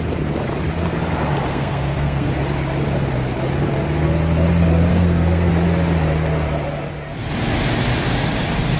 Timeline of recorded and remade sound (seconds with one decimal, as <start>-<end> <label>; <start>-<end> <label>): 0.0-1.5 recorded; 1.5-2.3 remade; 2.3-4.9 recorded; 4.9-5.5 remade; 5.5-8.8 recorded